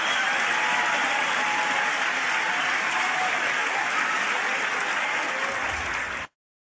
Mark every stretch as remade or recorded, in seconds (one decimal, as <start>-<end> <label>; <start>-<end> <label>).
0.0-6.7 recorded